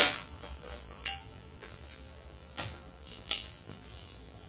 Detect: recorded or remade remade